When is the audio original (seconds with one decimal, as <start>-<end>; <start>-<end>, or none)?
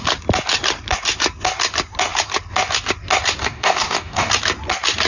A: 0.0-3.4; 4.3-5.1